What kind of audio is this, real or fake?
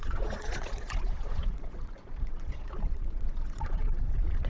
fake